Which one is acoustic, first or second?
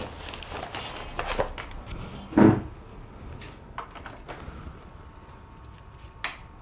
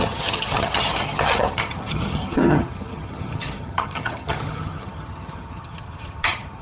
first